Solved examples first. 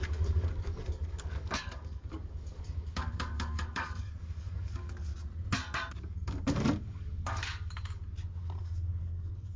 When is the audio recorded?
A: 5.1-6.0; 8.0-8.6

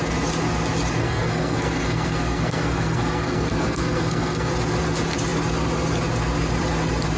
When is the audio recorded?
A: 0.0-1.0; 4.5-7.2

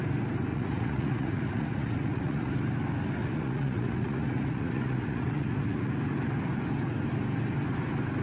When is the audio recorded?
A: 0.0-0.5; 2.5-3.2; 5.9-8.2

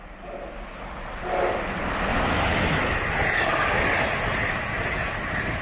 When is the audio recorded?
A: 0.0-5.6

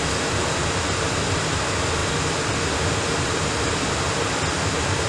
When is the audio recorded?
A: 0.0-5.1

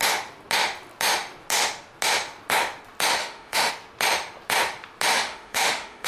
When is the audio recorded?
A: 0.0-3.2; 3.7-5.1

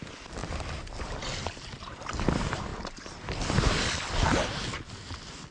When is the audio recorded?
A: 0.0-0.4; 2.1-5.5